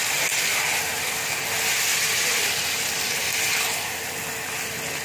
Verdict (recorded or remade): recorded